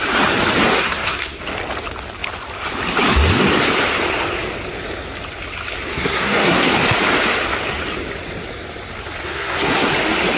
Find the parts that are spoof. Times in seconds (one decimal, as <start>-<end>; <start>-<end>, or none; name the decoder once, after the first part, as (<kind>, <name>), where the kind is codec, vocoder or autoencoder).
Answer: 0.7-1.4 (codec, SNAC); 5.9-6.7; 9.2-9.9